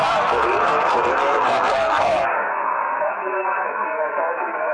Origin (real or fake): fake